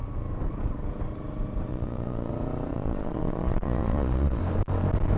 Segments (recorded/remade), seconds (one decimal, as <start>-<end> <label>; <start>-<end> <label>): 0.0-1.7 recorded; 1.7-2.3 remade; 2.3-2.7 recorded; 2.7-4.4 remade; 4.4-5.2 recorded